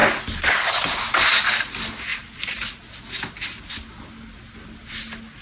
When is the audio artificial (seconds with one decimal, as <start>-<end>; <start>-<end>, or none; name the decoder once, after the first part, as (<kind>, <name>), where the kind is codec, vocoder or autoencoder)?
2.1-2.7 (vocoder, BigVGAN v2)